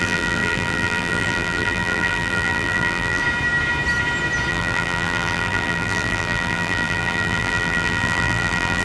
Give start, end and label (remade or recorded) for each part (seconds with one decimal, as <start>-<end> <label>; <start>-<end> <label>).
0.0-3.2 remade; 3.2-4.5 recorded; 4.5-8.8 remade